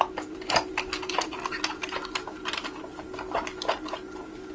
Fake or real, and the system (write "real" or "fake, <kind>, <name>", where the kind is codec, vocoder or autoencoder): real